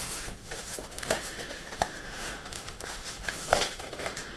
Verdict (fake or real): fake